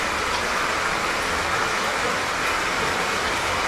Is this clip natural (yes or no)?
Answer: yes